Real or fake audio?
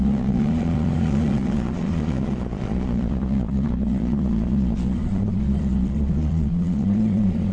fake